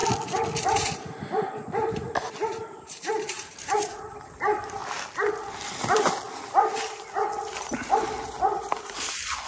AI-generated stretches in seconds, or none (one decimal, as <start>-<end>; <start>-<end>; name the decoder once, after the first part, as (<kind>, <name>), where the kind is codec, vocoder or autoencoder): 0.6-4.8 (vocoder, BigVGAN v2); 8.8-9.5